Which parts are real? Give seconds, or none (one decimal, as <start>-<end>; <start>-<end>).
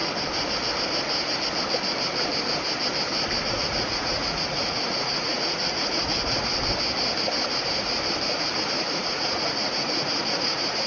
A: 0.0-3.5; 6.6-8.8